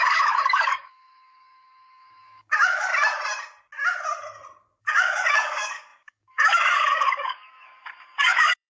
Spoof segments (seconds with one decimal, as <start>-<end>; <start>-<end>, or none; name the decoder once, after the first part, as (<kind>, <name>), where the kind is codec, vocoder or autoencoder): 0.0-2.9 (codec, DAC); 4.8-8.7